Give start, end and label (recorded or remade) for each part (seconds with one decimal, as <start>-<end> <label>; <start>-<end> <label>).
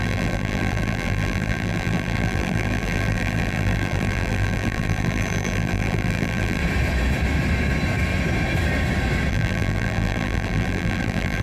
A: 0.0-6.6 remade; 6.6-9.3 recorded; 9.3-11.4 remade